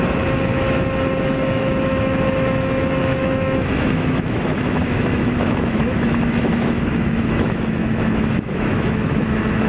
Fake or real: fake